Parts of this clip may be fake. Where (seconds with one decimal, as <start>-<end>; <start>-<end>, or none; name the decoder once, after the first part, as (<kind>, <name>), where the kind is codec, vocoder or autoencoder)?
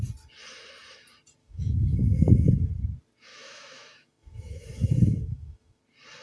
1.4-2.7 (autoencoder, DAC-VAE); 3.3-5.8